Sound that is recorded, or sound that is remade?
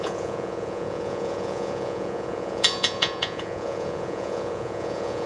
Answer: remade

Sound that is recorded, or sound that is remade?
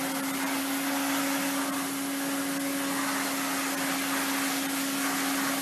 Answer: recorded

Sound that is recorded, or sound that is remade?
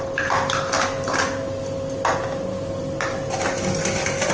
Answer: recorded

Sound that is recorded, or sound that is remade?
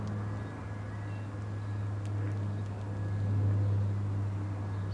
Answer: recorded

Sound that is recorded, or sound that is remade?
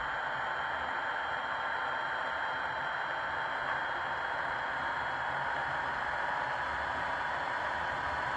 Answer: recorded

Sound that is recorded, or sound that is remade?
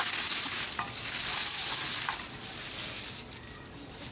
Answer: recorded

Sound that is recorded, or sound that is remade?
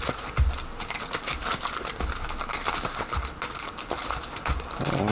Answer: recorded